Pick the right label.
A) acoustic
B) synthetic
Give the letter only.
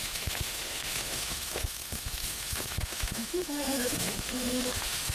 B